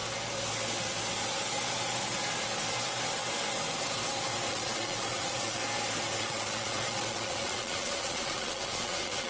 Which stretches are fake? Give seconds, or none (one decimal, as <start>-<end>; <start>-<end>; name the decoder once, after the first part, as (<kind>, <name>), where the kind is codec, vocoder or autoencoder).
4.5-5.6 (vocoder, Vocos); 6.2-9.3